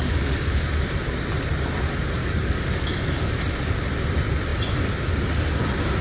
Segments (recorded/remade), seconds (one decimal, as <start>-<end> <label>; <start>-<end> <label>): 0.0-0.5 remade; 0.5-2.2 recorded; 2.2-3.3 remade; 3.3-6.0 recorded

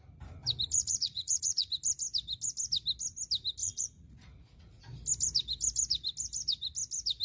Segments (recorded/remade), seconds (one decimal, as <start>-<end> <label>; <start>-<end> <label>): 0.0-0.8 recorded; 0.8-1.7 remade; 1.7-3.6 recorded; 3.6-4.8 remade; 4.8-7.2 recorded

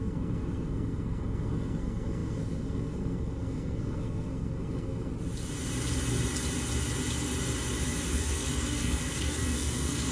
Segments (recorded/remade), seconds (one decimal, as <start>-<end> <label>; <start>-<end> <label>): 0.0-5.1 remade; 5.1-8.1 recorded; 8.1-10.1 remade

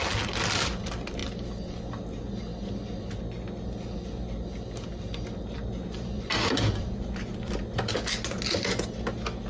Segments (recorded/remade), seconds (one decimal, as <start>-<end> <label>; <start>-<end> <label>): 0.0-4.9 recorded; 4.9-7.6 remade; 7.6-9.5 recorded

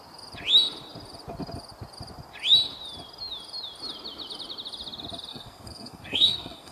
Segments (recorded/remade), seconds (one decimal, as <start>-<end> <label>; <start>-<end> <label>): 0.0-5.3 recorded; 5.3-6.7 remade

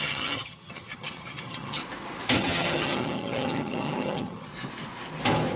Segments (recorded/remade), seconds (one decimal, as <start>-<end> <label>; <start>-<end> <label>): 0.0-1.8 remade; 1.8-2.4 recorded; 2.4-4.5 remade; 4.5-5.6 recorded